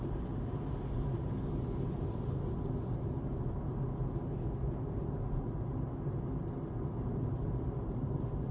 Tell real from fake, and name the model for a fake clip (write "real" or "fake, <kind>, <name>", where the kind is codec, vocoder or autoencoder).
real